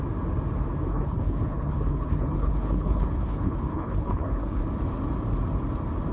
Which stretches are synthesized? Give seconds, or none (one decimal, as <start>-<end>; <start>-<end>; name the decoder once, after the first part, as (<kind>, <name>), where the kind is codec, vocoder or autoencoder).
0.9-4.6 (codec, HILCodec)